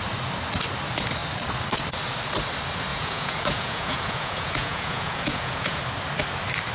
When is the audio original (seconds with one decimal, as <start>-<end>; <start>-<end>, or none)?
0.0-2.9; 5.8-6.7